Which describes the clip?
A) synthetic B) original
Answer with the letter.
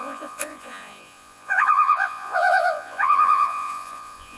A